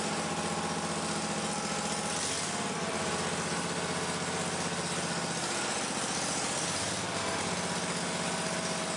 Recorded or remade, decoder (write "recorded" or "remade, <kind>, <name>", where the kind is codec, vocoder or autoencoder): recorded